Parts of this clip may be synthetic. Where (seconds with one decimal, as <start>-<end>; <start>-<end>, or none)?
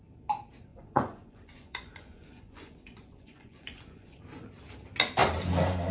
0.7-4.2